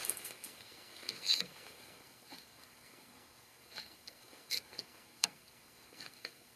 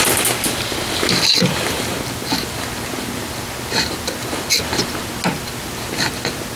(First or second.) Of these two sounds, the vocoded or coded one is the first